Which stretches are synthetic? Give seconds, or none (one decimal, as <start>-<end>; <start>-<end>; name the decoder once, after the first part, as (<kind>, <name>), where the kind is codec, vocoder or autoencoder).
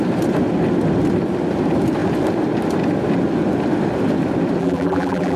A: 4.6-5.4 (vocoder, BigVGAN v2)